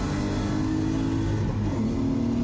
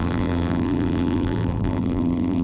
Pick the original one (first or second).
first